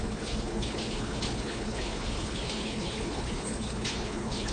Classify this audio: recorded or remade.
remade